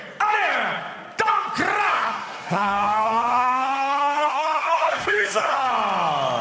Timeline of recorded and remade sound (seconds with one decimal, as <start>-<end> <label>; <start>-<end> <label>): 0.0-1.9 recorded; 1.9-5.7 remade; 5.7-6.4 recorded